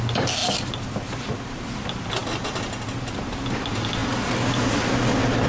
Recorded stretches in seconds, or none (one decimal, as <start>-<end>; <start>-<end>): 0.0-5.5